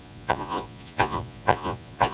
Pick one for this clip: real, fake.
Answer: fake